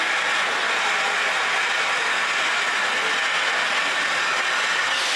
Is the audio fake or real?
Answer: real